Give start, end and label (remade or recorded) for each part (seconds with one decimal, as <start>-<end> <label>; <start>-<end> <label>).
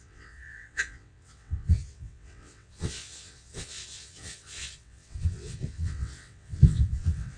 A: 0.0-7.4 remade